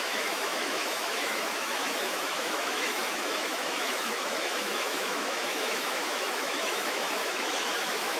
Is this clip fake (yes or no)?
yes